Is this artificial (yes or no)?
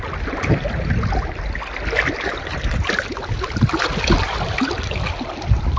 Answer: no